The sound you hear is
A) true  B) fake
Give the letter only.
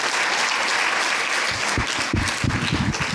A